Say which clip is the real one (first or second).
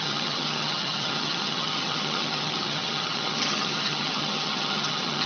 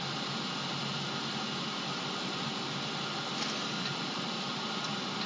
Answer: second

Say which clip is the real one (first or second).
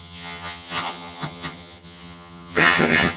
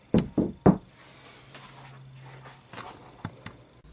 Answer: second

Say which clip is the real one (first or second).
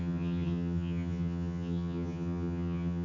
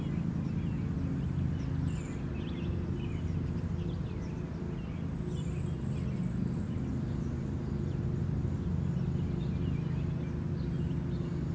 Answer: second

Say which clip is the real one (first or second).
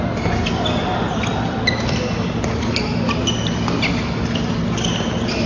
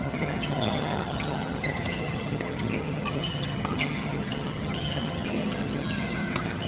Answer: first